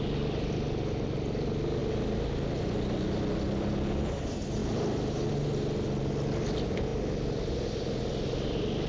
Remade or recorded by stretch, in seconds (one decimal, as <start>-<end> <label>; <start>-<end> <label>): 0.0-8.9 recorded